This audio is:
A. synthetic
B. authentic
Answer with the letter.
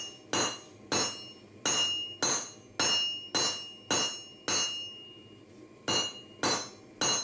B